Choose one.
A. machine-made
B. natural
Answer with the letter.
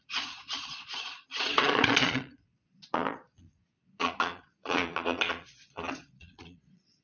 A